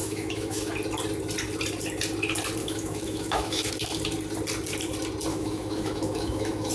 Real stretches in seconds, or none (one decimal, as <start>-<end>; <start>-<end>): 0.7-2.6; 3.7-5.3

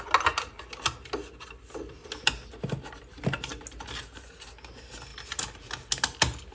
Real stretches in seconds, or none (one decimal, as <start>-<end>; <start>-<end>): 0.0-6.5

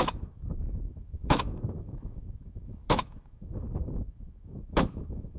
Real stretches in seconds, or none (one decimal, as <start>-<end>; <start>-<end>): none

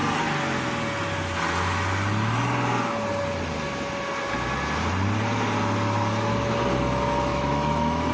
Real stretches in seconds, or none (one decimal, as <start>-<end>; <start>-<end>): 0.0-7.3

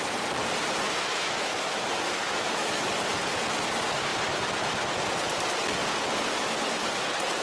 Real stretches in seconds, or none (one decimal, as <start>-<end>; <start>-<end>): 0.0-1.1; 2.9-7.4

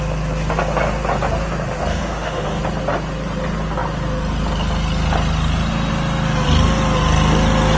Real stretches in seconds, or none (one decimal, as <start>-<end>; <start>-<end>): 0.0-1.9; 2.6-7.8

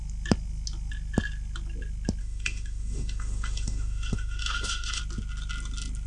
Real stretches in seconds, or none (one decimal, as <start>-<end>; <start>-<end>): 0.0-2.2; 5.0-6.1